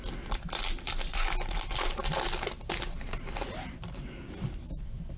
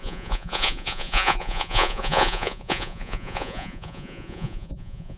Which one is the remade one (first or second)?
second